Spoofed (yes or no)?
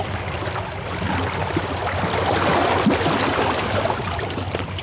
no